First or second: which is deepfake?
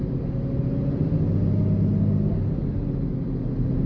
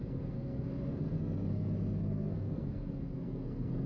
second